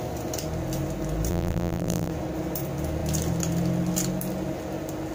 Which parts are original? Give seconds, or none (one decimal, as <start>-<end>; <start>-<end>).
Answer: 0.0-1.3; 2.1-5.1

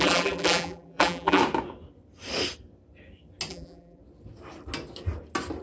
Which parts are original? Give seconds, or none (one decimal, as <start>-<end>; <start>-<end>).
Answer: 1.4-3.5; 4.0-5.6